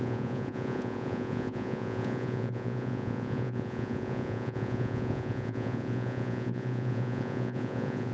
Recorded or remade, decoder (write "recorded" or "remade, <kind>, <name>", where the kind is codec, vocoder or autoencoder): remade, vocoder, Vocos